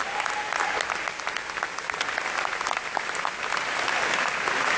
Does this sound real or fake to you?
real